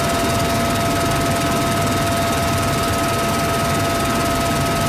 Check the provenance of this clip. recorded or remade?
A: recorded